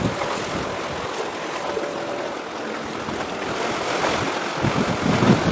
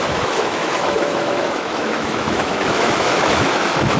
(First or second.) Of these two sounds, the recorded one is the first